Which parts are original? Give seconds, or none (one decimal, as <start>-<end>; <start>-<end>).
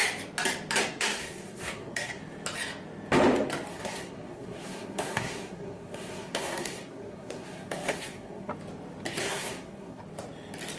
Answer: 0.0-0.8; 2.2-3.7; 8.5-9.2; 10.0-10.8